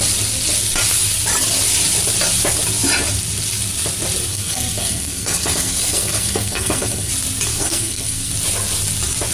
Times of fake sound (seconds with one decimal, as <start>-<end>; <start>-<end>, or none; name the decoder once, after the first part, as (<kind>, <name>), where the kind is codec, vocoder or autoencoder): 4.3-7.1 (codec, SNAC); 7.5-8.3